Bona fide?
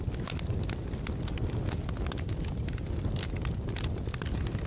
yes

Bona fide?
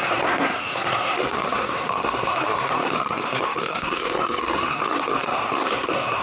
no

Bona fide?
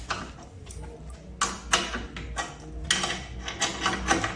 yes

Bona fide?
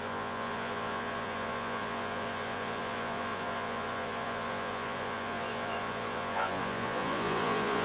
no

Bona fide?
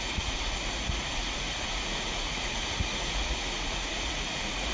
no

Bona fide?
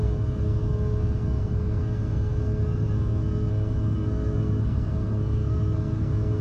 no